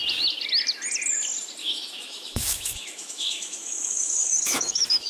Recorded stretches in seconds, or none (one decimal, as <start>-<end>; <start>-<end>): 0.0-1.6